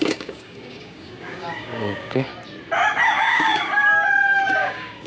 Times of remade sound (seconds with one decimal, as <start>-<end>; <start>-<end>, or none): 0.0-2.3; 3.2-3.9; 4.6-5.1